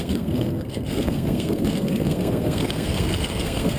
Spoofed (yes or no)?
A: yes